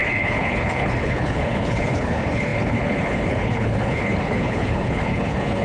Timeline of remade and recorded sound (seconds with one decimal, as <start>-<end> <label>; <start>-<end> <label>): 0.0-5.6 remade